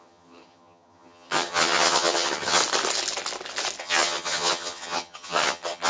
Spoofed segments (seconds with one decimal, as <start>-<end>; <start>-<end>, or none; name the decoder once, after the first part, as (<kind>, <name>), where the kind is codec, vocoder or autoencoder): 0.0-2.6 (vocoder, HiFi-GAN); 3.8-5.9